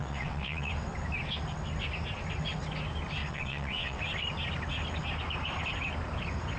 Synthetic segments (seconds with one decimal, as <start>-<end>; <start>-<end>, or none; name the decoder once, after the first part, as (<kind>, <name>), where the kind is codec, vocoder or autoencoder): 0.0-0.7 (vocoder, WaveNeXt); 3.2-4.0